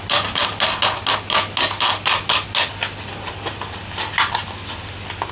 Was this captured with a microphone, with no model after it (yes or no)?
yes